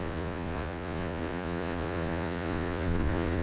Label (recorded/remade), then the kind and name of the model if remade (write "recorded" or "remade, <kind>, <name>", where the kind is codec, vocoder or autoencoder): remade, vocoder, Vocos